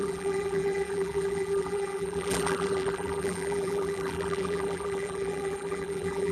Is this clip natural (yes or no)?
no